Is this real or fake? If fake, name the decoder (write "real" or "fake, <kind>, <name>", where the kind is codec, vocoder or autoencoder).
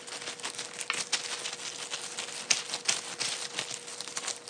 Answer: real